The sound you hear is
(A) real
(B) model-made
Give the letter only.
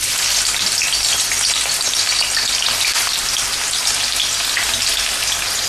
A